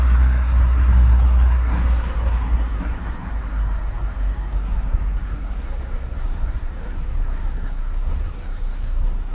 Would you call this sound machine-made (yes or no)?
yes